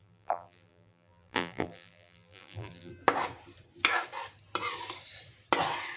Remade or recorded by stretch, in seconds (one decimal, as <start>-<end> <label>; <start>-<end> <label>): 0.0-2.9 remade; 2.9-6.0 recorded